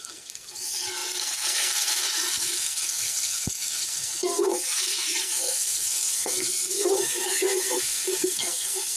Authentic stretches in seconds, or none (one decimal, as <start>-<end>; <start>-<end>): none